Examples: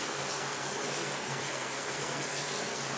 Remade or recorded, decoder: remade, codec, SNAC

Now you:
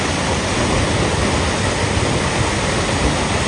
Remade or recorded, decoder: recorded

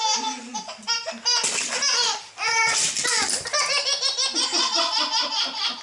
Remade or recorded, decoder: recorded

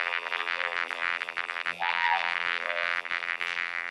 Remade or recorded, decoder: remade, vocoder, BigVGAN v2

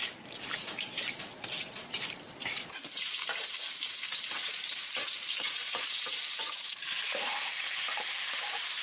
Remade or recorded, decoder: remade, vocoder, BigVGAN v2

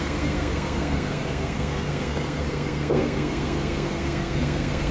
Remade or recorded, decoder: remade, codec, SNAC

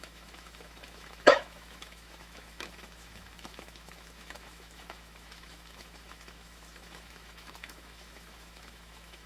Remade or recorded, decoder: remade, autoencoder, DAC-VAE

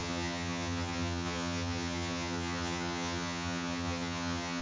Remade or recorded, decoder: remade, vocoder, HiFi-GAN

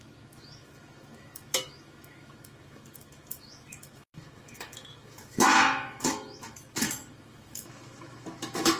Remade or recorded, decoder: remade, autoencoder, DAC-VAE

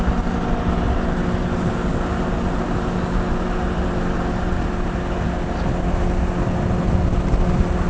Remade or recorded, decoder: recorded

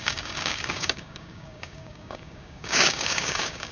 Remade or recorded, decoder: remade, codec, DAC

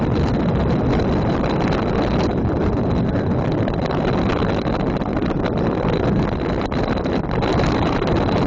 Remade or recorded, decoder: recorded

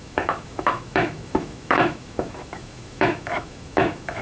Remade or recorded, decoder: remade, autoencoder, DAC-VAE